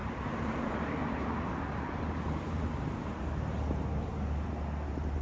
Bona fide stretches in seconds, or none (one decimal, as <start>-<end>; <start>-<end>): 3.1-5.2